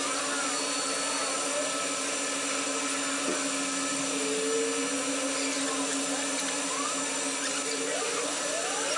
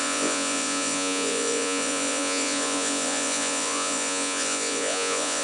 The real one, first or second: first